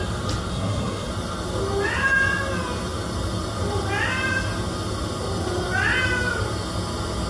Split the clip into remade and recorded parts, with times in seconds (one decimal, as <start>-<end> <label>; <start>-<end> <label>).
0.0-0.5 recorded; 0.5-1.1 remade; 1.1-7.3 recorded